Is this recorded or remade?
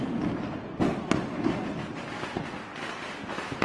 recorded